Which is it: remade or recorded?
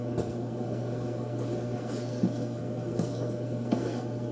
remade